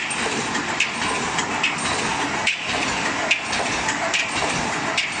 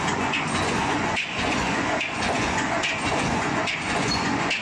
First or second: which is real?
first